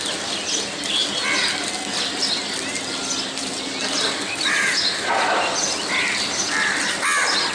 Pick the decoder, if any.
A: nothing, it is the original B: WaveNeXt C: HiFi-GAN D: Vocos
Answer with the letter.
A